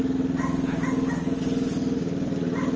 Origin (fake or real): real